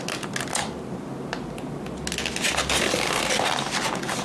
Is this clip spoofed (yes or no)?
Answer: no